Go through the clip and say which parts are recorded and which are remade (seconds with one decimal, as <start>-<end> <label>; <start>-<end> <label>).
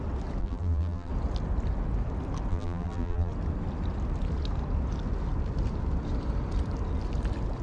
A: 0.0-0.4 recorded; 0.4-1.1 remade; 1.1-2.5 recorded; 2.5-3.3 remade; 3.3-7.6 recorded